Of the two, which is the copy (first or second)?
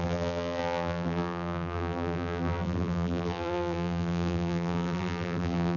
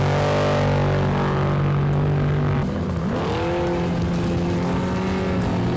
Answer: first